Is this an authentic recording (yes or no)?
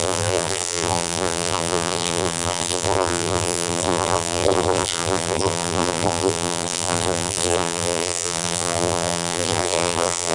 no